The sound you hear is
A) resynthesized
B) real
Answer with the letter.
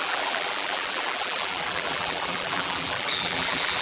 A